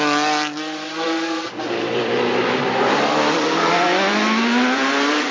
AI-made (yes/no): yes